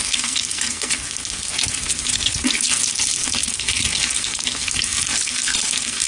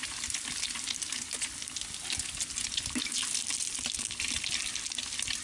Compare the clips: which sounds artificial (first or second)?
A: first